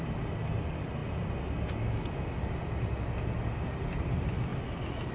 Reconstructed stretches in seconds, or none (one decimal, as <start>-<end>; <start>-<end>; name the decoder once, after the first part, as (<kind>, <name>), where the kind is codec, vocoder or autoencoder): none